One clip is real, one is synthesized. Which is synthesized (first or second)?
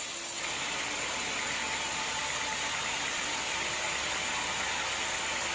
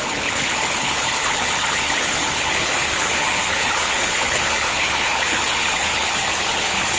second